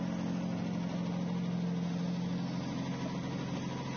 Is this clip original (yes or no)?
yes